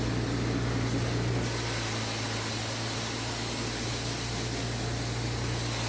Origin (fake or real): real